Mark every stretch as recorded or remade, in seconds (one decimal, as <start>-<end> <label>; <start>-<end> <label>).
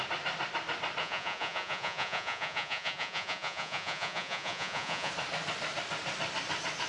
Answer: 0.0-1.0 recorded; 1.0-5.1 remade; 5.1-6.9 recorded